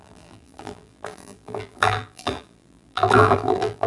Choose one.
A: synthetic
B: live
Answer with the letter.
A